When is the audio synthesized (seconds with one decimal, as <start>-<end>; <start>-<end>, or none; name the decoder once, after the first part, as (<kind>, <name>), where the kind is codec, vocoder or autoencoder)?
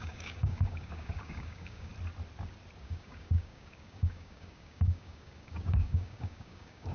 0.0-1.9 (codec, DAC); 2.8-6.9